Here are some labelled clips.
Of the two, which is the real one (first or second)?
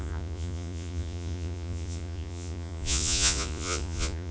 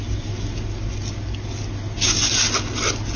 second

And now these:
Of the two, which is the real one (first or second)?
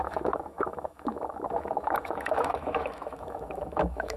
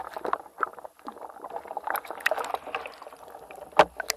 second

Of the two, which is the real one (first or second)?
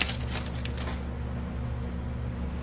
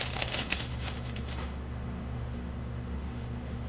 first